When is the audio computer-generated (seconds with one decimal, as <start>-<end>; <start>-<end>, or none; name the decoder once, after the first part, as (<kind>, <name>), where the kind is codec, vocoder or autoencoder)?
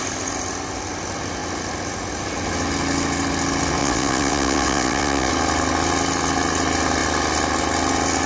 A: 3.8-5.3 (vocoder, WaveNeXt)